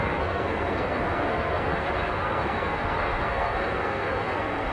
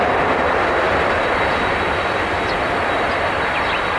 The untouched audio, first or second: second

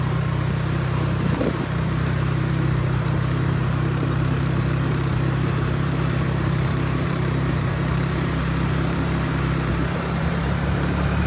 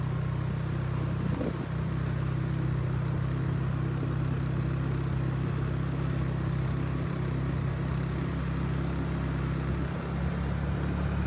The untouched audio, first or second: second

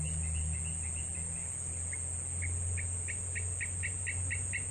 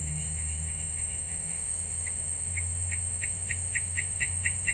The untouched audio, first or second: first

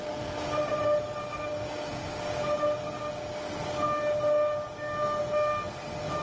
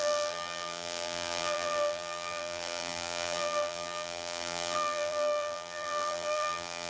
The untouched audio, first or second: first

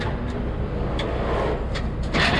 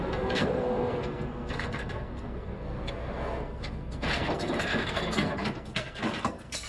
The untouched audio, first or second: first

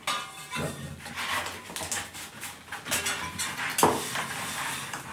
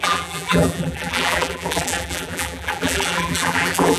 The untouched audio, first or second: first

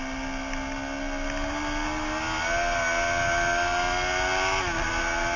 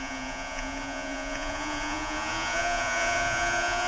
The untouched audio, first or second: first